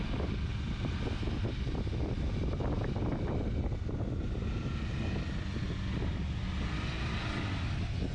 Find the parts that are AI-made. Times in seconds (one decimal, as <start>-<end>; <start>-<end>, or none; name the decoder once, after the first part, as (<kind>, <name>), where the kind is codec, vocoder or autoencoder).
none